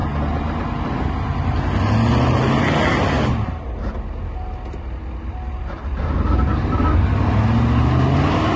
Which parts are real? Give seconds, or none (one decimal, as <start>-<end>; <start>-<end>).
0.0-8.6